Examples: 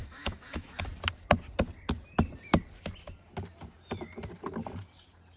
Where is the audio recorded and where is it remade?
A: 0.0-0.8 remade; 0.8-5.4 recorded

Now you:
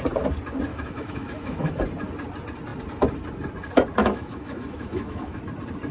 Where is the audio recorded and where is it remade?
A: 0.0-0.7 recorded; 0.7-1.8 remade; 1.8-4.0 recorded; 4.0-5.4 remade; 5.4-5.9 recorded

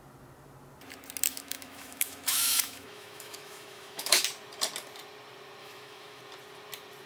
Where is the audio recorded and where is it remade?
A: 0.0-1.3 recorded; 1.3-4.2 remade; 4.2-5.6 recorded; 5.6-6.2 remade; 6.2-7.1 recorded

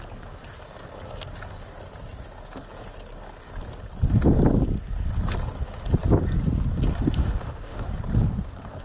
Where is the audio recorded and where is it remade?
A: 0.0-7.2 recorded; 7.2-7.9 remade; 7.9-8.8 recorded

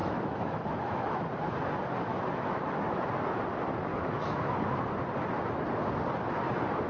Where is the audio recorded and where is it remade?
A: 0.0-1.2 remade; 1.2-2.1 recorded; 2.1-3.1 remade; 3.1-3.9 recorded; 3.9-4.5 remade; 4.5-6.9 recorded

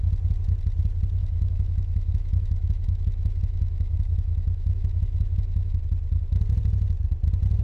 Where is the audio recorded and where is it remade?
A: 0.0-1.2 recorded; 1.2-5.8 remade; 5.8-7.6 recorded